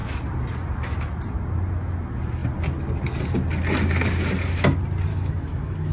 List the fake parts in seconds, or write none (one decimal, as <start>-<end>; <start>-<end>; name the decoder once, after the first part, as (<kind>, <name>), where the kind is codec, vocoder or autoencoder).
5.1-5.9 (autoencoder, DAC-VAE)